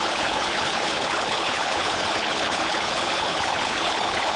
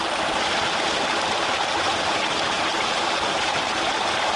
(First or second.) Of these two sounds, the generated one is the first